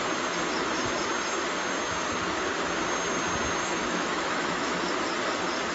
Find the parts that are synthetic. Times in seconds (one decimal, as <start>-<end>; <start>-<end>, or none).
3.8-4.8